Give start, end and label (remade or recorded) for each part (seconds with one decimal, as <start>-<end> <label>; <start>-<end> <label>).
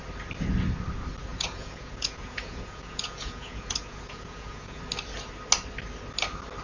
0.0-1.3 recorded; 1.3-4.8 remade; 4.8-6.6 recorded